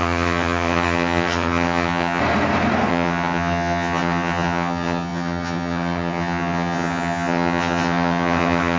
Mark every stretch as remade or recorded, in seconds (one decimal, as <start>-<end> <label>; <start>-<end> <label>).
0.0-2.2 remade; 2.2-2.9 recorded; 2.9-8.8 remade